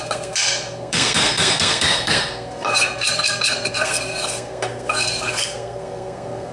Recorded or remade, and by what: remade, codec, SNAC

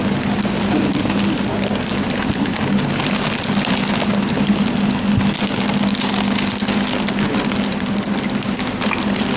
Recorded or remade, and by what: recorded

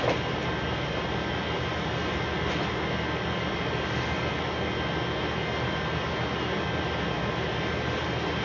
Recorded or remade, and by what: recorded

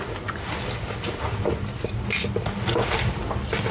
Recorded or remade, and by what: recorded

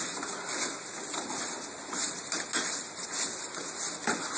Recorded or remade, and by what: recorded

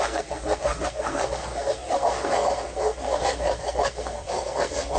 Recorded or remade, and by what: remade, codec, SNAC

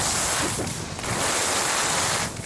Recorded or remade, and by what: recorded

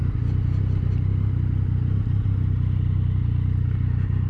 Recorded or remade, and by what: recorded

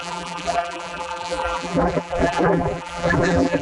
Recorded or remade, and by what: remade, vocoder, BigVGAN v2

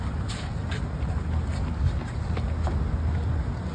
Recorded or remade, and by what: recorded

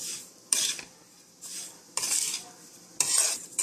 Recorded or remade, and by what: remade, vocoder, BigVGAN v2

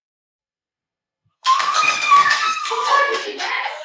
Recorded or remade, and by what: remade, codec, SNAC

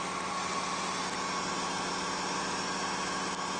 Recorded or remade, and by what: recorded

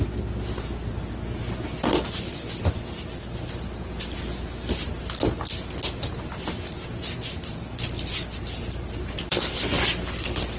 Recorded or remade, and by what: recorded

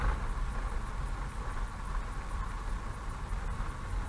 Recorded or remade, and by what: recorded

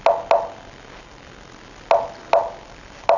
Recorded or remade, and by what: recorded